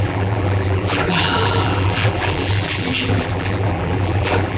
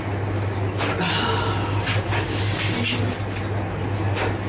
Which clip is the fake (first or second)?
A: first